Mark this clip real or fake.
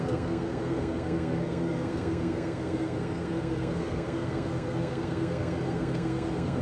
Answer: fake